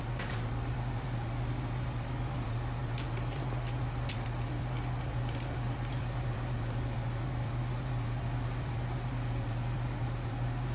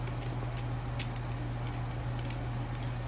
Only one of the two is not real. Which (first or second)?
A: first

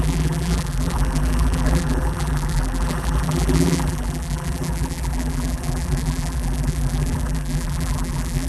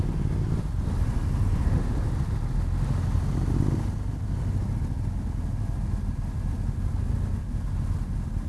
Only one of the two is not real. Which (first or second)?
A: first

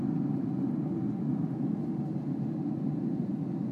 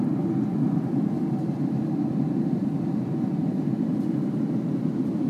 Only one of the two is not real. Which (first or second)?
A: second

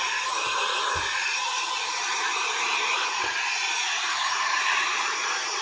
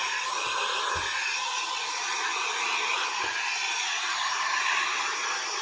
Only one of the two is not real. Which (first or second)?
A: first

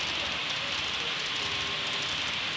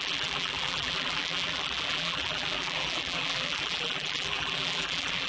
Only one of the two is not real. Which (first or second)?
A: second